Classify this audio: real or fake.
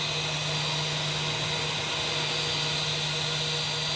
real